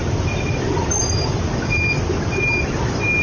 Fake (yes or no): no